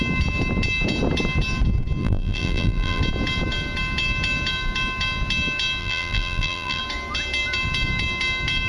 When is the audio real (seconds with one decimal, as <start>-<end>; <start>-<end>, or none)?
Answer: 0.0-2.0; 3.0-5.8; 6.8-8.7